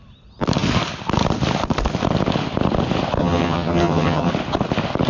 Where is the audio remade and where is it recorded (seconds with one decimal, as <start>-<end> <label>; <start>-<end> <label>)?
0.0-3.2 recorded; 3.2-4.3 remade; 4.3-5.1 recorded